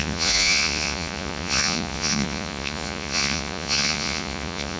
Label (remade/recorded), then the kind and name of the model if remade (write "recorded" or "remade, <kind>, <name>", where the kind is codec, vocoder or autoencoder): remade, vocoder, Vocos